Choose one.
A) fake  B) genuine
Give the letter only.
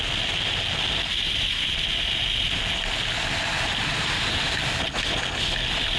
B